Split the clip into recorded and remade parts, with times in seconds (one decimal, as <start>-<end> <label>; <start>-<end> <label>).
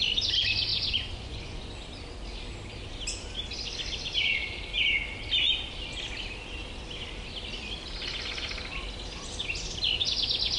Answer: 0.0-0.7 recorded; 0.7-1.7 remade; 1.7-10.6 recorded